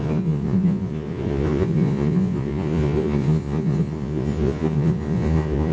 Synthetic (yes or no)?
yes